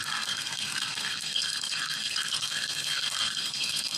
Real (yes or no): no